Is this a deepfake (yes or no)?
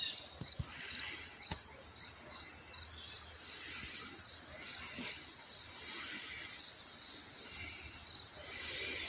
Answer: no